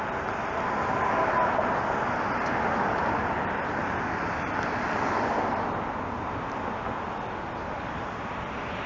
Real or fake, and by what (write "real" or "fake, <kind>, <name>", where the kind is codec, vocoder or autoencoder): real